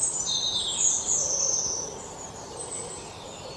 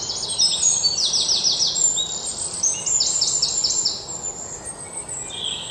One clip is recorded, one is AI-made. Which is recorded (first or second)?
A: second